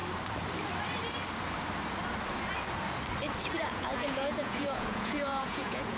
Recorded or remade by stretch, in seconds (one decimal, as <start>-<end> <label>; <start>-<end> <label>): 0.0-3.6 recorded; 3.6-6.0 remade